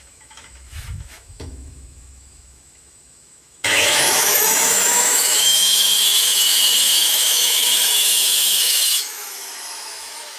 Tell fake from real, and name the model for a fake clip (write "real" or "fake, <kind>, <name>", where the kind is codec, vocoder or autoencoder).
fake, autoencoder, DAC-VAE